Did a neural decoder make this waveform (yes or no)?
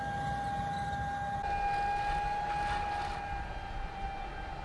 no